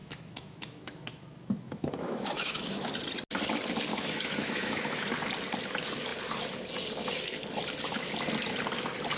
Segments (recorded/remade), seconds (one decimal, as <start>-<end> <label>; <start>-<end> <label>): 0.0-2.9 remade; 2.9-3.9 recorded; 3.9-5.1 remade; 5.1-9.2 recorded